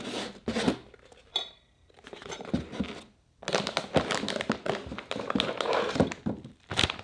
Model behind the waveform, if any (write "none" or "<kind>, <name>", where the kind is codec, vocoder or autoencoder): none